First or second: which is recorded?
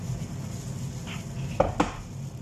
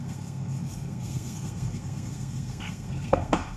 first